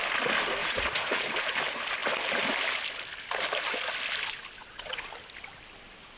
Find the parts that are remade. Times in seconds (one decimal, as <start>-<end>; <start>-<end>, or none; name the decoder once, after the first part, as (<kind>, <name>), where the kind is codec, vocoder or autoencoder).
0.6-1.2 (vocoder, Vocos); 4.6-5.1